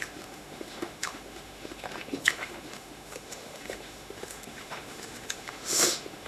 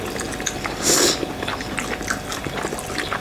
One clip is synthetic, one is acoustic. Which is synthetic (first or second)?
first